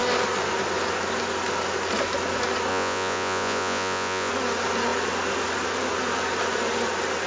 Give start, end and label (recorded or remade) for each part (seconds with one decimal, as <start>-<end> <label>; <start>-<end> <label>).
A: 0.0-2.7 recorded; 2.7-4.3 remade; 4.3-7.3 recorded